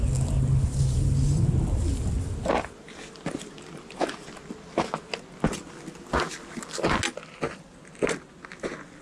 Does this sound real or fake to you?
real